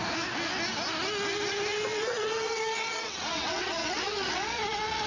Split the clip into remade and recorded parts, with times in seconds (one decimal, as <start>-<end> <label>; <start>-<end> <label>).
0.0-1.9 recorded; 1.9-5.1 remade